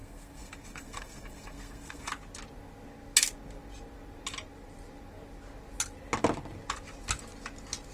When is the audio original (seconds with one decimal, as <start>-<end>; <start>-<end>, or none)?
2.1-7.9